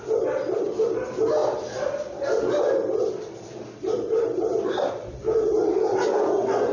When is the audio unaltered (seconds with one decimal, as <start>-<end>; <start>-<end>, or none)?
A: 0.0-6.7